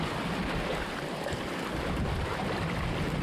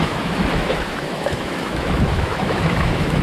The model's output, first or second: second